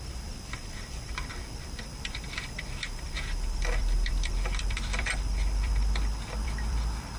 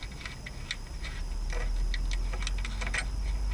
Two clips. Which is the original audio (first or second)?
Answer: second